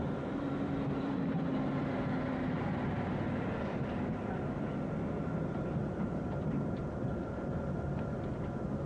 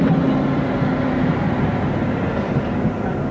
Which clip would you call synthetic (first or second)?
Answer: first